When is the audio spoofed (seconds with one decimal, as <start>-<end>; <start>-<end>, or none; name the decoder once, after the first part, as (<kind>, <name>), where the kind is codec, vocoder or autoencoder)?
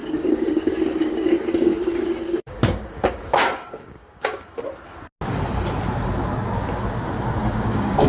0.0-4.6 (codec, DAC); 7.4-8.1